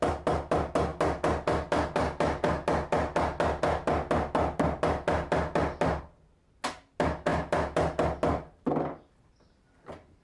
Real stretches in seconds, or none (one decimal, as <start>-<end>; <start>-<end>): 0.0-10.2